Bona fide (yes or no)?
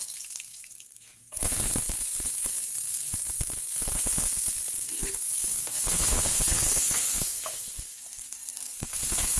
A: no